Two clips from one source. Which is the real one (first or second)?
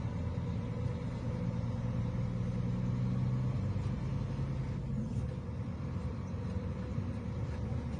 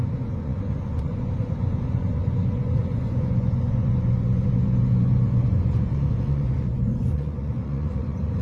first